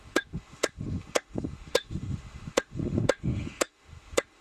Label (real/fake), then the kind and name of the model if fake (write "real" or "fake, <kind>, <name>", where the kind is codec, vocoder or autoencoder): fake, autoencoder, DAC-VAE